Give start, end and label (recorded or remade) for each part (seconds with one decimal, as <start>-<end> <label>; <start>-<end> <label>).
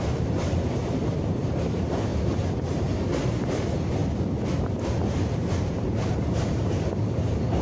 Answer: 0.0-4.0 remade; 4.0-5.5 recorded; 5.5-7.6 remade